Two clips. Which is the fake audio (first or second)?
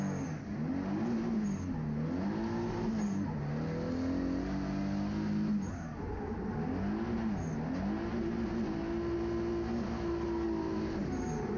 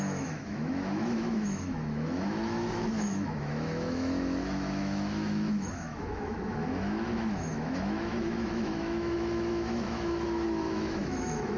second